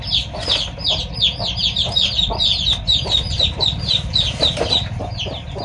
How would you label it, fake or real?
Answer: real